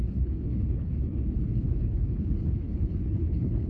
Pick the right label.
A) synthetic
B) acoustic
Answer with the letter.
A